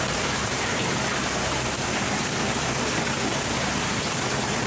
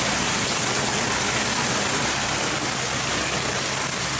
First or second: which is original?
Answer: second